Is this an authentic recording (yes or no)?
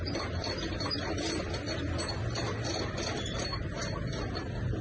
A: yes